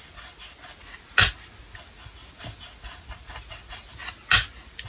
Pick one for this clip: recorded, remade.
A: recorded